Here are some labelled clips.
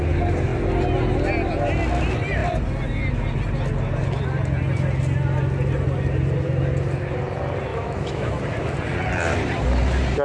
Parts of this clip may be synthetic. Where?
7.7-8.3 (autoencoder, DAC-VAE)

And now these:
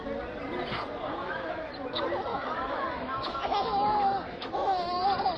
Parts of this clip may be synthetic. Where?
1.2-1.7 (autoencoder, DAC-VAE); 2.3-5.0